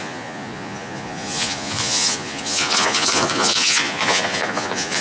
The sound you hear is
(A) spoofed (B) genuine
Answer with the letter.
A